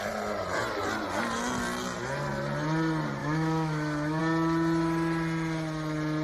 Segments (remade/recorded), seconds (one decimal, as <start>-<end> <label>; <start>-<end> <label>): 0.0-3.2 recorded; 3.2-4.2 remade; 4.2-6.2 recorded